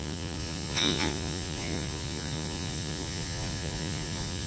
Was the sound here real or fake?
fake